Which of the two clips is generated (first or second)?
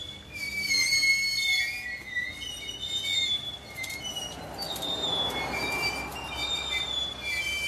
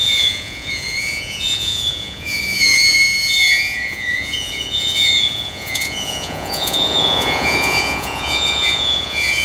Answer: second